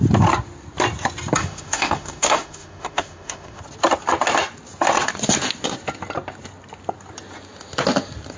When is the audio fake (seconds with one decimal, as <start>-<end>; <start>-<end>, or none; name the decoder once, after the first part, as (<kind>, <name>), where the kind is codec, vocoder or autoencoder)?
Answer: 1.4-3.6 (autoencoder, DAC-VAE)

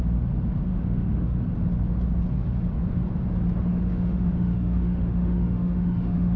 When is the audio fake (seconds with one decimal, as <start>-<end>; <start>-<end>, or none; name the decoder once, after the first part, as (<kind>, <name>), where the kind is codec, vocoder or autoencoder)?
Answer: 0.7-1.4 (autoencoder, DAC-VAE); 3.9-6.4

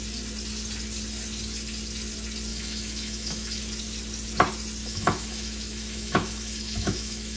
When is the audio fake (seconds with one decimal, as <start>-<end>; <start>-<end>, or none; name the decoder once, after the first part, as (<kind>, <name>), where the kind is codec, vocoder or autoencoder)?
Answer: 2.5-3.6 (autoencoder, DAC-VAE); 4.8-7.4

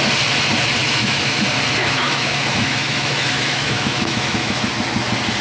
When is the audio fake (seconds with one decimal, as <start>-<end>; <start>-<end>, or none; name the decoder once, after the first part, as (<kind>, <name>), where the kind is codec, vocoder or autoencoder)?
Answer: 0.8-1.4 (autoencoder, DAC-VAE); 1.8-4.6

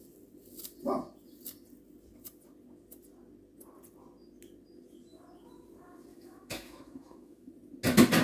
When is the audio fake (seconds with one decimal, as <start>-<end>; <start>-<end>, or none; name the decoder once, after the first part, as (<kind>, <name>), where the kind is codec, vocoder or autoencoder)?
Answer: 6.1-7.5 (autoencoder, DAC-VAE)

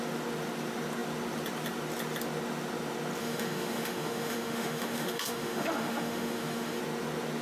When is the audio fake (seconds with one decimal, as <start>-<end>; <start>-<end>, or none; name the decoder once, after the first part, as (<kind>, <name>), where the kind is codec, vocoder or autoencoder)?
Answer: 3.2-6.8 (autoencoder, DAC-VAE)